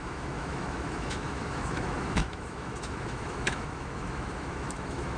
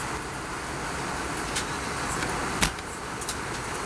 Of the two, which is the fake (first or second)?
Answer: first